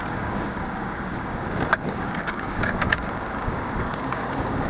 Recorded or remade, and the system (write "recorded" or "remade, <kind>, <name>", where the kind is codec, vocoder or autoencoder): remade, codec, DAC